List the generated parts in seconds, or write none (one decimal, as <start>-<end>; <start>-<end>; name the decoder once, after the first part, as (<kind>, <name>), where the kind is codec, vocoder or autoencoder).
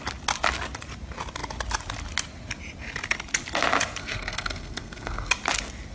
4.0-5.3 (codec, SNAC)